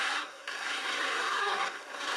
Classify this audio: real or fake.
fake